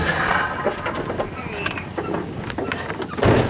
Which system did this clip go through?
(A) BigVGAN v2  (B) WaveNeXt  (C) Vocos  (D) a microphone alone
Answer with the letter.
D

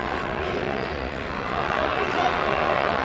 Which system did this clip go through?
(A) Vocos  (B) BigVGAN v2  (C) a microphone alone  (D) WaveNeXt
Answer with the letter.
D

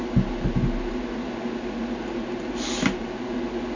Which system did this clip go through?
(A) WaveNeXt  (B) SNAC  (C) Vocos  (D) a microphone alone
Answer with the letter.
D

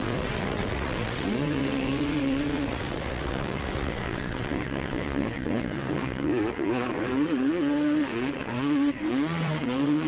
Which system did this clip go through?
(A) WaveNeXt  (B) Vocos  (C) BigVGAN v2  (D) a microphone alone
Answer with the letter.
A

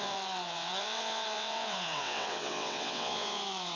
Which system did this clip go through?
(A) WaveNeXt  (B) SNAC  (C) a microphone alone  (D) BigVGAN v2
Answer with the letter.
A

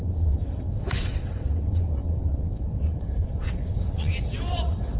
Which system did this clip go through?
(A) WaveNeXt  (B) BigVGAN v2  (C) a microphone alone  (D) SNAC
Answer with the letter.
A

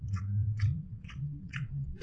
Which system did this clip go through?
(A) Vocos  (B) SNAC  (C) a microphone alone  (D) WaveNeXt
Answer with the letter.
D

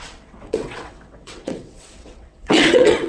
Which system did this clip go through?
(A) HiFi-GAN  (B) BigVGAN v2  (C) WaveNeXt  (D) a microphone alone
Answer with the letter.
C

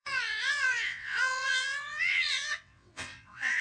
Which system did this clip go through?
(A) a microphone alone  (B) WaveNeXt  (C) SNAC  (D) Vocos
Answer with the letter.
B